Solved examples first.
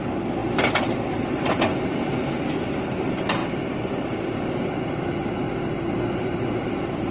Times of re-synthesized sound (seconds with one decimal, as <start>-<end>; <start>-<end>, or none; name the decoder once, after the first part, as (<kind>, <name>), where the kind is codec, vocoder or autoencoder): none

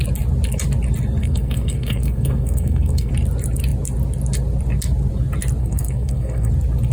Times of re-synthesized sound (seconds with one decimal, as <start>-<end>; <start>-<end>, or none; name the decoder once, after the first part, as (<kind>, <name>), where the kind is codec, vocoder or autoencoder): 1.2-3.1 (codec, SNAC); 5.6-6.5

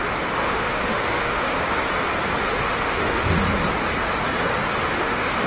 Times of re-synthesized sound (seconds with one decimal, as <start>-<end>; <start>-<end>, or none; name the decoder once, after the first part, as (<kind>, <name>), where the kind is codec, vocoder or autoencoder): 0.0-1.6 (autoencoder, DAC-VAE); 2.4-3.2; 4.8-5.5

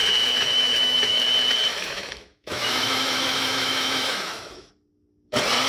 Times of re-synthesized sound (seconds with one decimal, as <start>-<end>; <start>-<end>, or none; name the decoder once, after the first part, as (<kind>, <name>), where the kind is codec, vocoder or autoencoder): 0.0-1.2 (autoencoder, DAC-VAE); 1.7-4.7

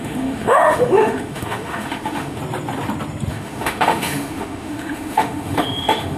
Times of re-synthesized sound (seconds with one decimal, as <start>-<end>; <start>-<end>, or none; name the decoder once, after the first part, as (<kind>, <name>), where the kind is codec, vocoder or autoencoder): 0.0-2.4 (autoencoder, DAC-VAE); 3.3-6.2